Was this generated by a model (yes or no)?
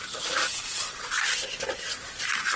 no